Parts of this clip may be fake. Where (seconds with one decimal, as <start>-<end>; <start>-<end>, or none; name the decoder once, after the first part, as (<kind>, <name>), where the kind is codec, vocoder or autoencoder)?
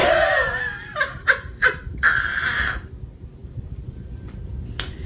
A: 0.0-2.9 (vocoder, BigVGAN v2); 3.4-4.5